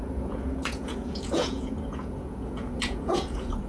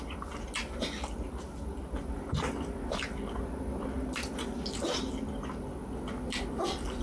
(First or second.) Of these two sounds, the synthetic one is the first